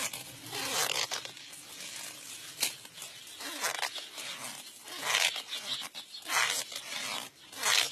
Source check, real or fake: real